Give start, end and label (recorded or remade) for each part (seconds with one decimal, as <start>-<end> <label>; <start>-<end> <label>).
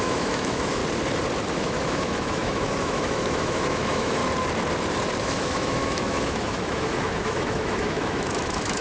0.0-0.8 remade; 0.8-1.5 recorded; 1.5-4.2 remade; 4.2-5.2 recorded; 5.2-8.8 remade